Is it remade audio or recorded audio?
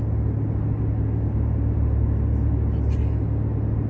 recorded